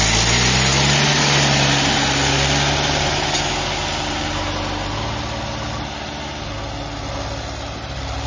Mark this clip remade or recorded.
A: recorded